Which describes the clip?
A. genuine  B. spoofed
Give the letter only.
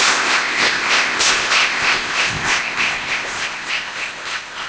B